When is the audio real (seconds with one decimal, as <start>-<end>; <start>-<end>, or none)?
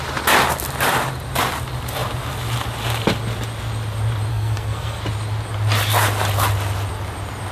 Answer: 0.0-4.3; 5.0-7.5